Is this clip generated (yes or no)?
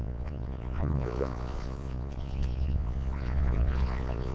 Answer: yes